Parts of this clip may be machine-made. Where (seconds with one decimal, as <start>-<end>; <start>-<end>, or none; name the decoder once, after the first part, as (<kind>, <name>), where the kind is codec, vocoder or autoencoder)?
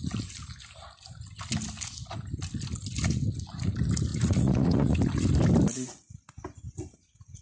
4.1-5.0 (vocoder, Vocos)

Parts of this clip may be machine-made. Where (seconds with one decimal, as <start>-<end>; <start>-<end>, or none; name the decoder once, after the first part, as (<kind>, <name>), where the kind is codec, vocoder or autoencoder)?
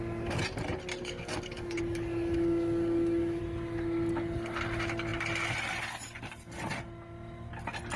1.0-3.4 (codec, DAC)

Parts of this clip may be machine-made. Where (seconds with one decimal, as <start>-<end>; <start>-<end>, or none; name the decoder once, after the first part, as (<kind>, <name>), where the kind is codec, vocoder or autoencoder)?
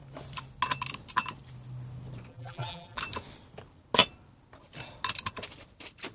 2.3-3.0 (vocoder, BigVGAN v2)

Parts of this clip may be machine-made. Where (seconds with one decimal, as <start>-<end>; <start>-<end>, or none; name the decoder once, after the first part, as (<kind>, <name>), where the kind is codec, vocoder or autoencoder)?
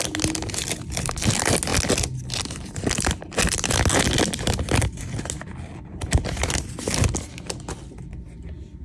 none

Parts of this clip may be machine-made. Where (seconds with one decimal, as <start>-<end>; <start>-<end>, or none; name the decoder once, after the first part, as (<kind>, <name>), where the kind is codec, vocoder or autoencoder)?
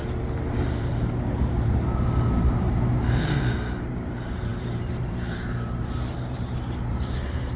0.0-7.6 (vocoder, BigVGAN v2)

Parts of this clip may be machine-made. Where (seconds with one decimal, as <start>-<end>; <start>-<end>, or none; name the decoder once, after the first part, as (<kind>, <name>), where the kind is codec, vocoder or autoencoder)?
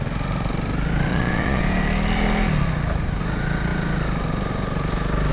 1.1-1.6 (vocoder, Vocos)